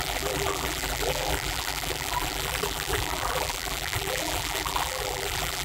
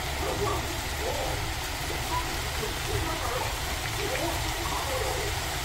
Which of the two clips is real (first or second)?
second